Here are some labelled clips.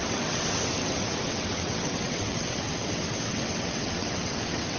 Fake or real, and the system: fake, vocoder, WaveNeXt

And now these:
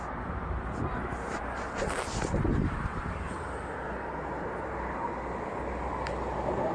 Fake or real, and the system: real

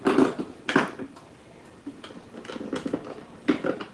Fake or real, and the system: real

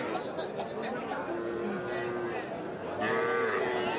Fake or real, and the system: real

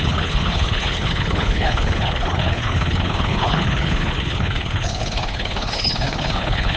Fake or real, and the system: fake, codec, HILCodec